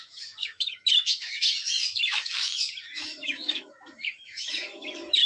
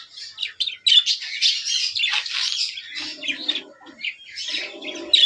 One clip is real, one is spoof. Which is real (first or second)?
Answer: second